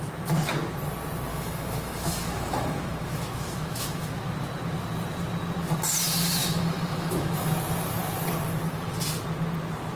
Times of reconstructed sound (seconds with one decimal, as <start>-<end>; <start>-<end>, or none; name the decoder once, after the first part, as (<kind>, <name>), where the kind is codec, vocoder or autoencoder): 1.3-4.2 (autoencoder, DAC-VAE); 6.4-7.5